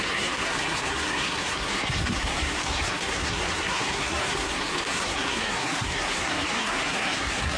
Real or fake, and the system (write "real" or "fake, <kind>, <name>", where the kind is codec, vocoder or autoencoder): fake, codec, SNAC